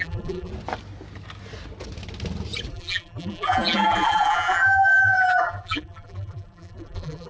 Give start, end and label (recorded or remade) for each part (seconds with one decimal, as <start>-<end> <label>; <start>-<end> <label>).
0.0-0.5 remade; 0.5-2.7 recorded; 2.7-7.3 remade